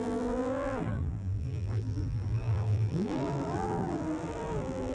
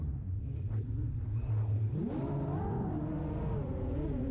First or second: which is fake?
first